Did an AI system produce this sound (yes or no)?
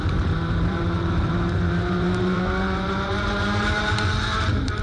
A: yes